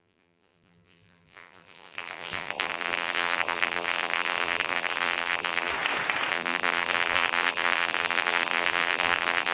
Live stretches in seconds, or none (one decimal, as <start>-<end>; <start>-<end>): 5.7-6.3